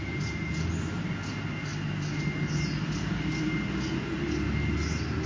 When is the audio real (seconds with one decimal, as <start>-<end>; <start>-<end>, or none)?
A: 0.7-5.3